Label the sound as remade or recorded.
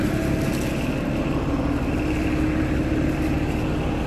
recorded